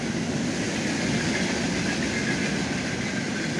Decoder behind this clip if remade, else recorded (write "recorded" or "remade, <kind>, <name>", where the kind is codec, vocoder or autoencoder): recorded